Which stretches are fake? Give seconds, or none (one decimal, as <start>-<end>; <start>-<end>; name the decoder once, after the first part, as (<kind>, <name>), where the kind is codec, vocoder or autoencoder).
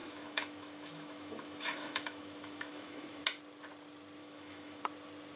0.0-3.2 (autoencoder, DAC-VAE); 4.2-4.8